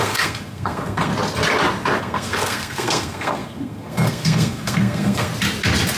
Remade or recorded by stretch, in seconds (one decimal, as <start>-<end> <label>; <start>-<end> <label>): 0.0-1.1 remade; 1.1-2.0 recorded; 2.0-5.3 remade; 5.3-6.0 recorded